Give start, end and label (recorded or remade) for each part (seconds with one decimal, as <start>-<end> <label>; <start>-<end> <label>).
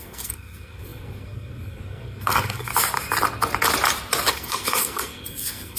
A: 0.0-2.7 remade; 2.7-4.3 recorded; 4.3-5.8 remade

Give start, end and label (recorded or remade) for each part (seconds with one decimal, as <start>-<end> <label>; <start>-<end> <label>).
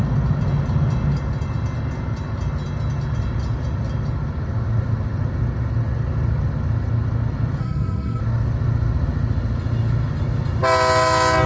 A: 0.0-7.6 recorded; 7.6-8.2 remade; 8.2-11.5 recorded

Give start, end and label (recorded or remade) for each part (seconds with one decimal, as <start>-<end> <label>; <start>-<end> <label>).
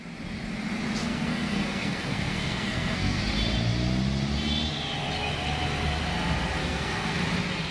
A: 0.0-1.0 recorded; 1.0-3.2 remade; 3.2-6.6 recorded; 6.6-7.2 remade; 7.2-7.7 recorded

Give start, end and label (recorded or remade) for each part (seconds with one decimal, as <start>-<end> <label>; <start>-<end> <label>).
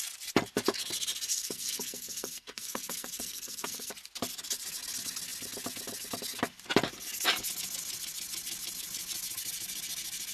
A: 0.0-1.3 recorded; 1.3-3.9 remade; 3.9-10.3 recorded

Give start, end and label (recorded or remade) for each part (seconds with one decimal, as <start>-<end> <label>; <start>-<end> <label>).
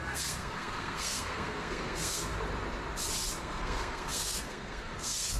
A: 0.0-2.3 remade; 2.3-3.4 recorded; 3.4-5.4 remade